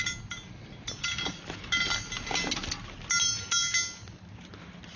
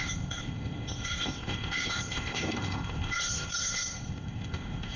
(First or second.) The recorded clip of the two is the first